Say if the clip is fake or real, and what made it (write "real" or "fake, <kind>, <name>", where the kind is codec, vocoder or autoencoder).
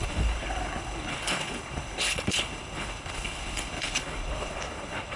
fake, codec, HILCodec